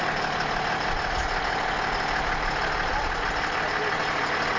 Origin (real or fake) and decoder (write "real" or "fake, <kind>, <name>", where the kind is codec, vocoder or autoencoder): real